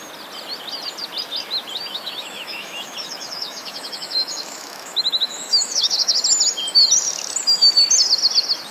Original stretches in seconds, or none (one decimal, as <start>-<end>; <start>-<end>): 0.0-1.9; 6.2-8.7